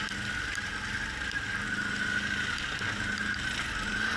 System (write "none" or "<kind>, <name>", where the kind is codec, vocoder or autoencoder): none